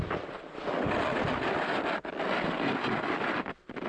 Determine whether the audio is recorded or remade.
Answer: recorded